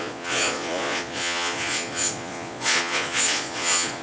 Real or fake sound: fake